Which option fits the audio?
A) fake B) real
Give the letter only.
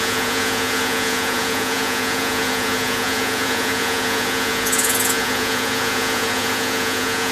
A